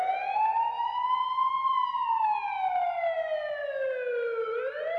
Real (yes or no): yes